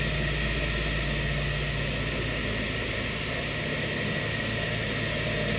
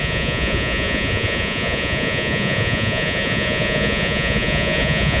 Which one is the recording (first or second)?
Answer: first